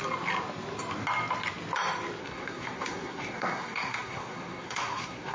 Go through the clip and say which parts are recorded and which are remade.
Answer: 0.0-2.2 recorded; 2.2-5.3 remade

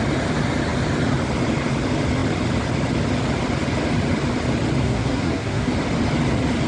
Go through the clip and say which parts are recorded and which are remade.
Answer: 0.0-4.8 recorded; 4.8-5.7 remade; 5.7-6.7 recorded

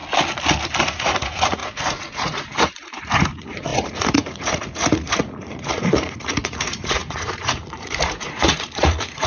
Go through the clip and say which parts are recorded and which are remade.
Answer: 0.0-0.8 recorded; 0.8-9.3 remade

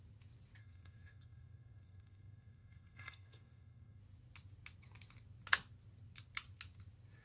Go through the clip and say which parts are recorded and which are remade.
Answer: 0.0-0.6 recorded; 0.6-4.0 remade; 4.0-7.2 recorded

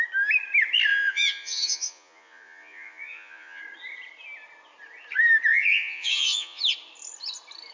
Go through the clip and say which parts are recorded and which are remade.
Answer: 0.0-0.9 recorded; 0.9-3.6 remade; 3.6-5.5 recorded; 5.5-6.6 remade; 6.6-7.7 recorded

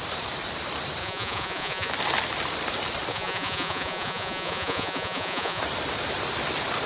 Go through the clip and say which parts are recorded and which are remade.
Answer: 0.0-1.0 recorded; 1.0-1.9 remade; 1.9-3.1 recorded; 3.1-5.6 remade; 5.6-6.9 recorded